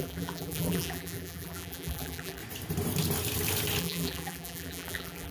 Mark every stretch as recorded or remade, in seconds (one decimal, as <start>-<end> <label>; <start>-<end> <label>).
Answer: 0.0-2.4 remade; 2.4-3.8 recorded; 3.8-5.3 remade